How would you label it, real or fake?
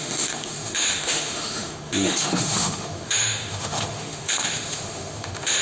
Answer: fake